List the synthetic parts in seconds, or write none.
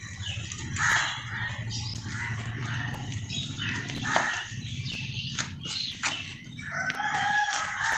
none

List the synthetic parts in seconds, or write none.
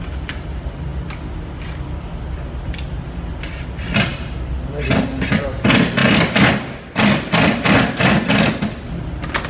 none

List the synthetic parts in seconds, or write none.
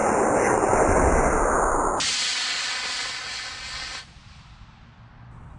none